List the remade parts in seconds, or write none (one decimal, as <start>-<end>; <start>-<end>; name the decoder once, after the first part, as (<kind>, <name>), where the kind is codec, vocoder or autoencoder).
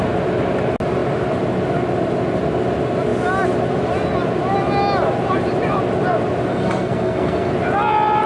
6.5-7.5 (codec, SNAC)